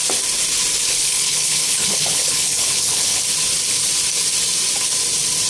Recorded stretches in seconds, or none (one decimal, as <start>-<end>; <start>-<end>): 0.0-0.8; 3.2-5.5

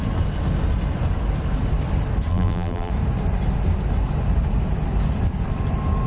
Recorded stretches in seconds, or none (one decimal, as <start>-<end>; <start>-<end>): 0.0-2.3; 2.9-6.1

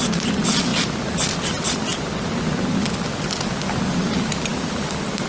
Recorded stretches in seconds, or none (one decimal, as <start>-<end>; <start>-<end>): 0.0-5.3

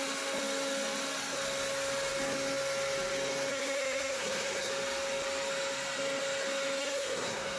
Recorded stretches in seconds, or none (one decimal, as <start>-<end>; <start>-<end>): 0.0-3.5; 4.7-6.8

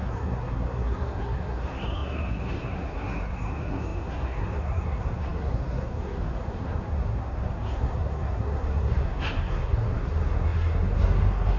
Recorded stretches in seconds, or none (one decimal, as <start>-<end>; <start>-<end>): none

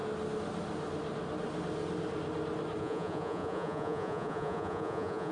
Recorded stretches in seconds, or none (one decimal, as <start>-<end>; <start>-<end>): 0.0-2.8

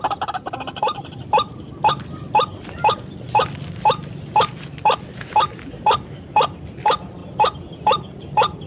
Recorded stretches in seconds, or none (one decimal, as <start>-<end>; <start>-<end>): 1.5-6.2; 7.2-7.8

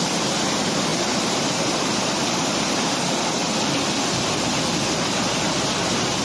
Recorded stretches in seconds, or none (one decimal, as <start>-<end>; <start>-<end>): 0.0-0.9; 3.2-6.2